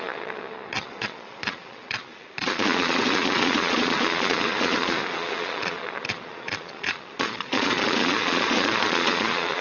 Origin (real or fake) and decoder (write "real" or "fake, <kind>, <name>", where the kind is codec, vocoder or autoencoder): fake, vocoder, Vocos